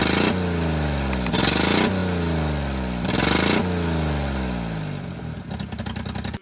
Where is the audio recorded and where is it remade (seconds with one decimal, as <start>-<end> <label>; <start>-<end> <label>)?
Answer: 0.0-6.4 recorded